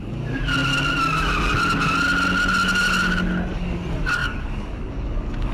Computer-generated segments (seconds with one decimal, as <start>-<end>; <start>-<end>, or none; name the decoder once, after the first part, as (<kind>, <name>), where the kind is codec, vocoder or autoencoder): 0.0-0.4 (codec, DAC); 3.5-5.5